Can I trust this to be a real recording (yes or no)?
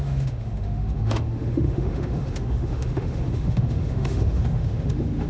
no